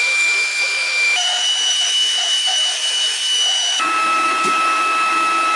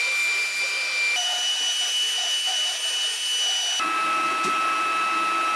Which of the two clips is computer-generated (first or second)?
first